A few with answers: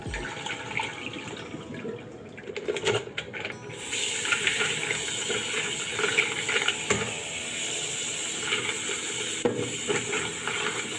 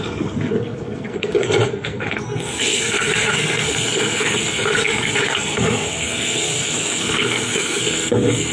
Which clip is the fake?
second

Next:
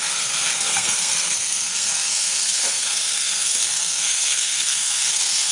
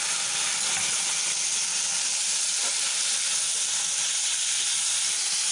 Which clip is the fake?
first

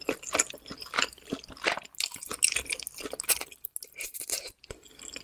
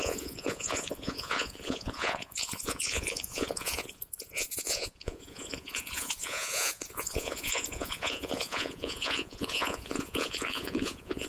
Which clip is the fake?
second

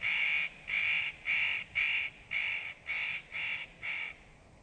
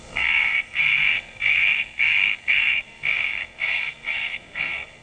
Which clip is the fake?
second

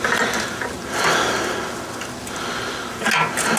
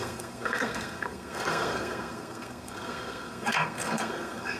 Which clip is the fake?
second